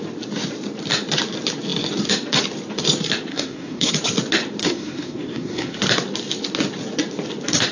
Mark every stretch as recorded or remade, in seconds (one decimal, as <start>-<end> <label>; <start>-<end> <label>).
0.0-3.3 recorded; 3.3-3.9 remade; 3.9-4.6 recorded; 4.6-5.8 remade; 5.8-7.7 recorded

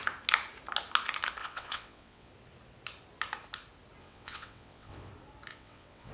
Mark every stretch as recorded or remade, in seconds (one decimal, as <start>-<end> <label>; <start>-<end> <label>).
0.0-1.4 recorded; 1.4-2.3 remade; 2.3-4.0 recorded; 4.0-5.1 remade; 5.1-5.5 recorded; 5.5-6.1 remade

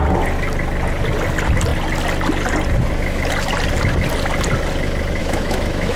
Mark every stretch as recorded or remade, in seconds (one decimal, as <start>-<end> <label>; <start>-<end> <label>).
0.0-5.2 recorded; 5.2-6.0 remade

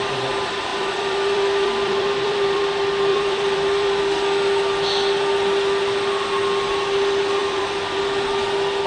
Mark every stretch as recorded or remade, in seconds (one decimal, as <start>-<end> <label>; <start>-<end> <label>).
0.0-0.7 recorded; 0.7-2.6 remade; 2.6-3.1 recorded; 3.1-4.0 remade; 4.0-7.4 recorded; 7.4-8.0 remade; 8.0-8.9 recorded